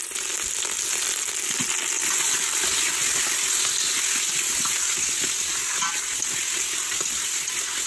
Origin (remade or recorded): recorded